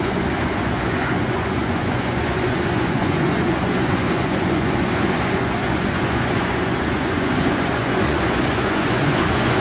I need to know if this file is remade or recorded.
remade